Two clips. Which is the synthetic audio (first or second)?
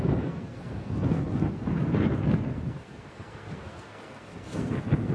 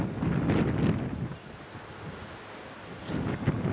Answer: first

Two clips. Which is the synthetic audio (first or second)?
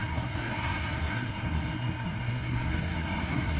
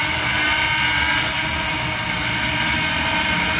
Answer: first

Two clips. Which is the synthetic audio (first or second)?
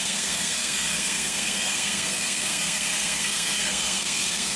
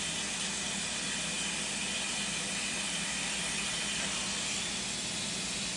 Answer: first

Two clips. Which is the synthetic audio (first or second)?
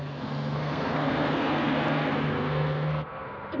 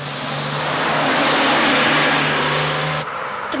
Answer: first